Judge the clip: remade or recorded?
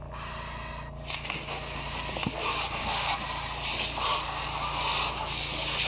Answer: recorded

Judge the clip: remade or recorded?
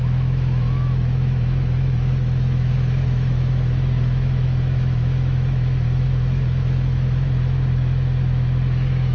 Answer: remade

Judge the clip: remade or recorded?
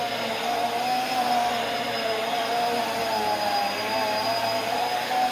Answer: recorded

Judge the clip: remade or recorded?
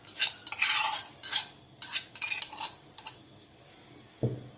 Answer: recorded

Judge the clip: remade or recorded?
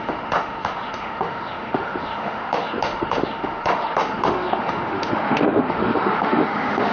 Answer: remade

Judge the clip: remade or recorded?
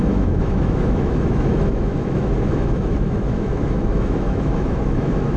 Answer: remade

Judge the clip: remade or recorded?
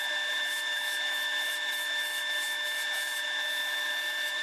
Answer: remade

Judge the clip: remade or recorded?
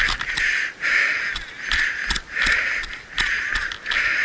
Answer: recorded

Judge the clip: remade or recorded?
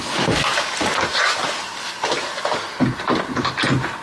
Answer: recorded